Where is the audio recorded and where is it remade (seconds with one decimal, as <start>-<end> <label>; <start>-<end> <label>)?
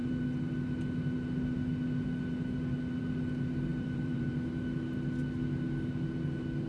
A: 0.0-3.7 recorded; 3.7-4.5 remade; 4.5-6.7 recorded